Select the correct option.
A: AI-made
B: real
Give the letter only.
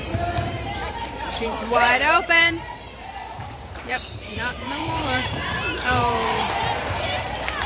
A